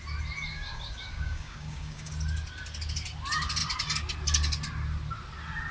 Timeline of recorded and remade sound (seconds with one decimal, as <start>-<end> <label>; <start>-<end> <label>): 0.0-0.5 recorded; 0.5-2.1 remade; 2.1-5.7 recorded